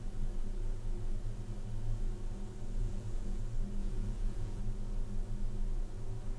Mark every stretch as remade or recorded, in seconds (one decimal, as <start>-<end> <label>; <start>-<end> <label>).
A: 0.0-2.8 recorded; 2.8-3.4 remade; 3.4-3.8 recorded; 3.8-4.6 remade; 4.6-6.4 recorded